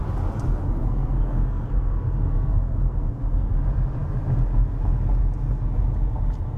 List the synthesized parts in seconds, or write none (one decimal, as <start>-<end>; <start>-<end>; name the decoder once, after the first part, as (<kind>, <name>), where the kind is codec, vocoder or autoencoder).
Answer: 0.8-3.5 (codec, SNAC)